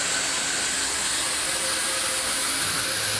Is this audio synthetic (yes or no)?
no